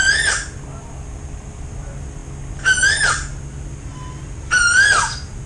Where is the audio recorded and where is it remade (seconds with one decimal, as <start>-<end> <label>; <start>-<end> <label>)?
0.0-5.5 recorded